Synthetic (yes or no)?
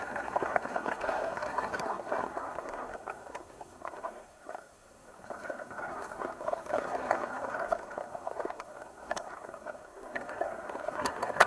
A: yes